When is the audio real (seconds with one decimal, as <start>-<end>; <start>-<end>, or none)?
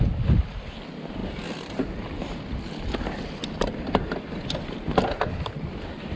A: 0.0-6.2